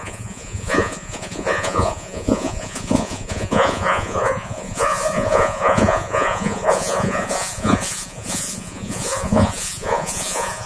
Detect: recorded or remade remade